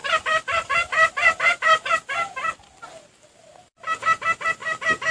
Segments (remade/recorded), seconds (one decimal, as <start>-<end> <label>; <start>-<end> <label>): 0.0-1.9 remade; 1.9-5.1 recorded